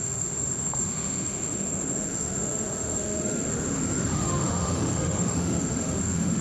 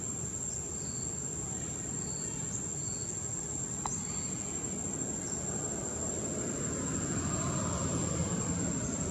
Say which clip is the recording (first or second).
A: second